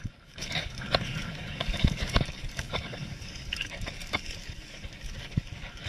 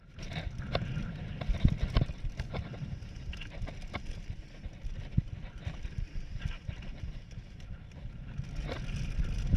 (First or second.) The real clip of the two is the second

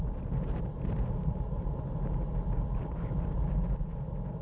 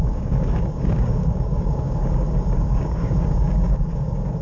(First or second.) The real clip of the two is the first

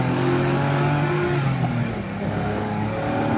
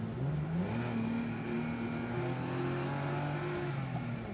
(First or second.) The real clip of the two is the second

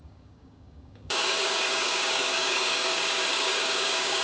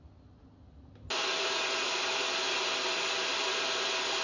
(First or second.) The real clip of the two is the second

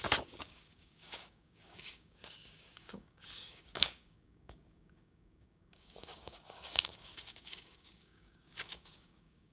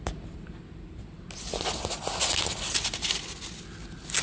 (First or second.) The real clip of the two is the second